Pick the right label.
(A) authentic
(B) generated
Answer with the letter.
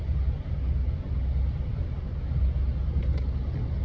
A